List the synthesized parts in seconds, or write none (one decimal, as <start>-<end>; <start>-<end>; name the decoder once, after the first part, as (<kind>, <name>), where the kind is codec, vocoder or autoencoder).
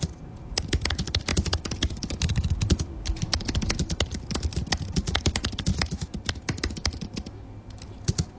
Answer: none